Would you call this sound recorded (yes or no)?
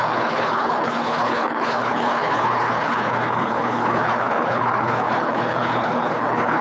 no